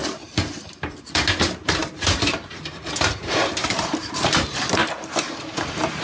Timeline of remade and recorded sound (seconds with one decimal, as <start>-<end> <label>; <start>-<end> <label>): 0.0-6.0 remade